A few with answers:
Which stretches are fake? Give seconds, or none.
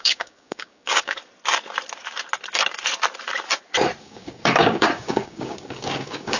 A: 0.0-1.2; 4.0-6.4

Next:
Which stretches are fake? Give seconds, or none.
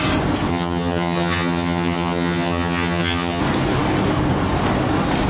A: 0.5-3.4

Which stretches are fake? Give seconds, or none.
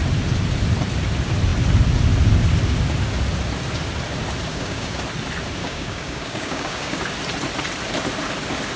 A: 4.5-5.0; 5.6-7.0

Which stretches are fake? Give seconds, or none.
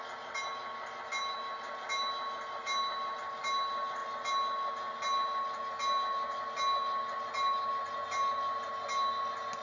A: none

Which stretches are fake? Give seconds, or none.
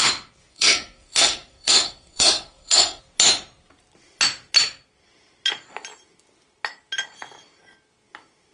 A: 0.5-3.0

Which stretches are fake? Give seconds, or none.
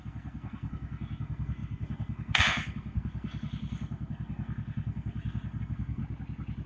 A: 0.0-6.0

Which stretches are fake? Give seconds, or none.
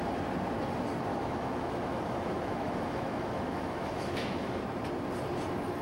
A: 1.1-4.6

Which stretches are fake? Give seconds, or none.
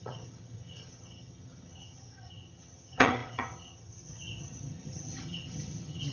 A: 0.0-6.1